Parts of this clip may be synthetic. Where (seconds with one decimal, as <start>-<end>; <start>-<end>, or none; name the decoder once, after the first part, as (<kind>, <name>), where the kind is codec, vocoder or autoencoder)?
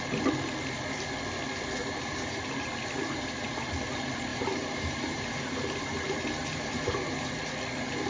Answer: 1.8-3.7 (vocoder, BigVGAN v2); 4.3-7.3